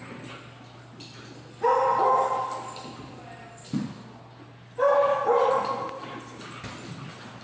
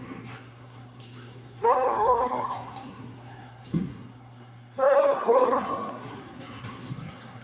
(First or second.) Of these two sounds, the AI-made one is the second